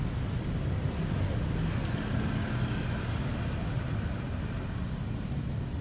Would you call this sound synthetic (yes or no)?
no